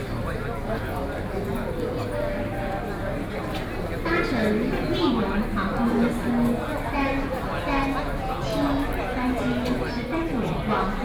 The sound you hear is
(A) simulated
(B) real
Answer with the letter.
B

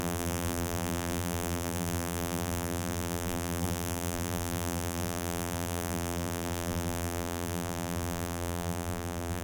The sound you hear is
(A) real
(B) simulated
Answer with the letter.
B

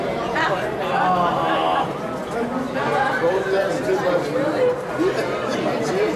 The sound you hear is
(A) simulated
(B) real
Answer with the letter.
B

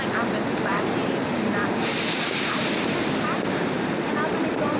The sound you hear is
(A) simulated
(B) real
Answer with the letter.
A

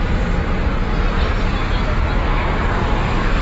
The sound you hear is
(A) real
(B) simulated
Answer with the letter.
A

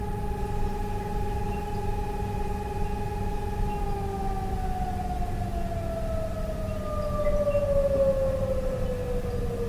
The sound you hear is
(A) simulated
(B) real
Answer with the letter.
B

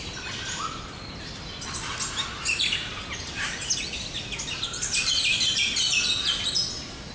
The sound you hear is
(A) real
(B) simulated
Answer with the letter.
A